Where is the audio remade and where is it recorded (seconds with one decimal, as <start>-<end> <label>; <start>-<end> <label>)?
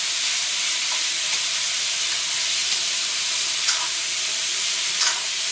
0.0-0.5 remade; 0.5-1.2 recorded; 1.2-5.5 remade